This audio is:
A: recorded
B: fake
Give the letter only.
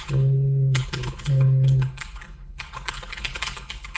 B